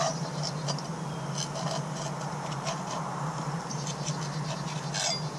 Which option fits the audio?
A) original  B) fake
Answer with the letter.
A